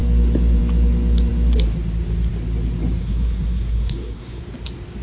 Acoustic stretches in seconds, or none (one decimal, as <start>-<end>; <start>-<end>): 0.0-3.0; 4.4-5.0